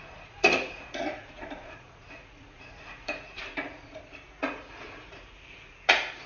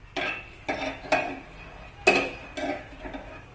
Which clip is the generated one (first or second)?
first